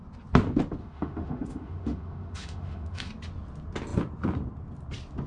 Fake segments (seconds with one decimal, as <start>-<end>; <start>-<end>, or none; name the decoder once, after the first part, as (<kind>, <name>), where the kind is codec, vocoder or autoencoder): 0.8-3.1 (autoencoder, DAC-VAE)